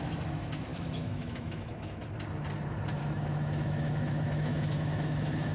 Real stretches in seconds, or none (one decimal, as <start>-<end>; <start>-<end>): 2.0-3.0